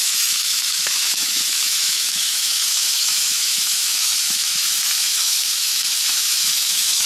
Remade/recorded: remade